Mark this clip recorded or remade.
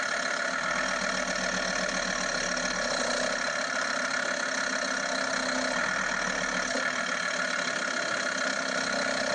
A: recorded